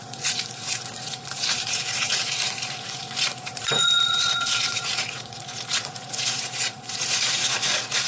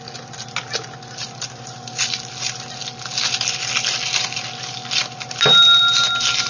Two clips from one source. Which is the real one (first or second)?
second